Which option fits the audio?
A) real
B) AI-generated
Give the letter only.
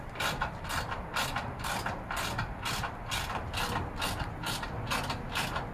A